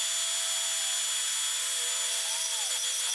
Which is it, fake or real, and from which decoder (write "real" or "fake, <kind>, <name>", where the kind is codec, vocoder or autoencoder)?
real